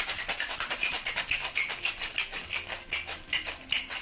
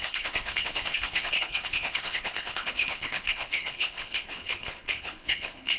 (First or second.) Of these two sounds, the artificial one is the second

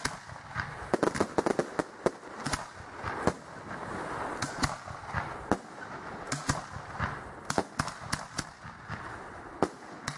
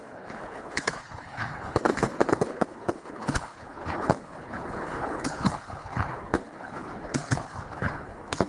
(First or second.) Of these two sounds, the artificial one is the second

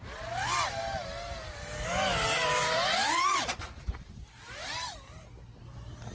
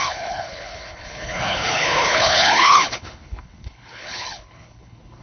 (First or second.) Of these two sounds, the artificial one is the second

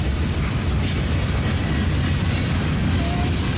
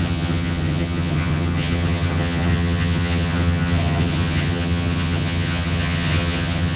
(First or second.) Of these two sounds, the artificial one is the second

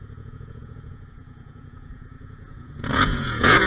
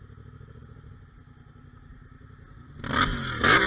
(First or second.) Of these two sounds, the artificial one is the first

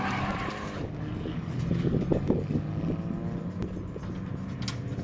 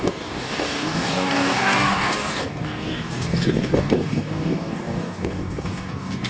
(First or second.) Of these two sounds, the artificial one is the second